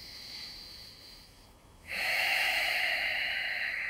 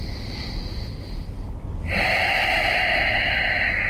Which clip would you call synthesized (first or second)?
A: first